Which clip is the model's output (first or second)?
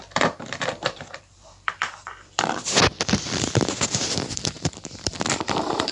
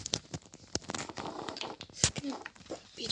first